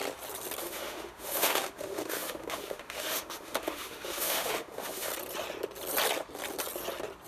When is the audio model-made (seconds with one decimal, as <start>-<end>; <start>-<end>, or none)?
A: 0.6-5.1